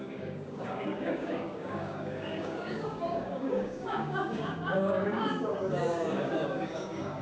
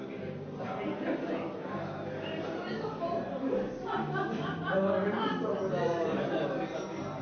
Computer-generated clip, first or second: first